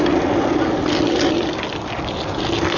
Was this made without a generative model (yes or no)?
yes